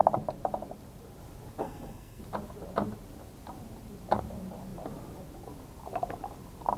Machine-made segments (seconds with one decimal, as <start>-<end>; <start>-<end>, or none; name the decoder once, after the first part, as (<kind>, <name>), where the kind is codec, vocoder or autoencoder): 1.6-2.2 (codec, SNAC)